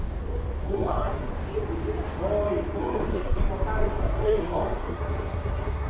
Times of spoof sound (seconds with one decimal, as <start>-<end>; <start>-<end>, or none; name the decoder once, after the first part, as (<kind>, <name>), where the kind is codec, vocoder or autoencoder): 0.6-1.3 (codec, SNAC); 2.8-3.4; 4.0-5.9